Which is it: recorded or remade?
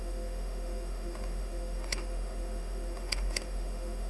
remade